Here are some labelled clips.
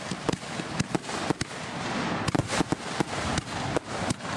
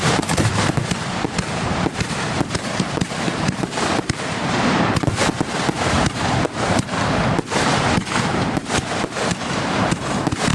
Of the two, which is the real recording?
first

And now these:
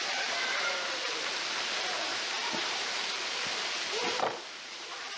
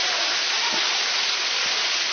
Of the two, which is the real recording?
second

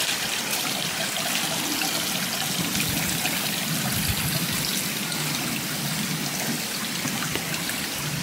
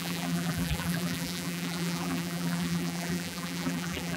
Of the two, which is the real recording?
first